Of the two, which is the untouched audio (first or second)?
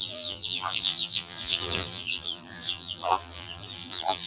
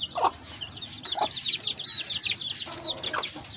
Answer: second